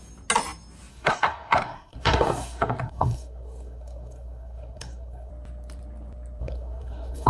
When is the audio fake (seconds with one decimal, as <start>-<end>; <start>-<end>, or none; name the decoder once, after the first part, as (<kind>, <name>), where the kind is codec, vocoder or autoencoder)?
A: 0.9-5.3 (codec, SNAC); 6.4-7.3